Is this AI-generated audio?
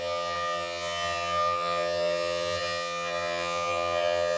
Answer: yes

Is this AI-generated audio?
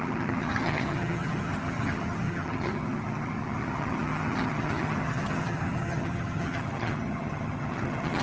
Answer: yes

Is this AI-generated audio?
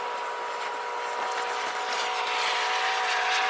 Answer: no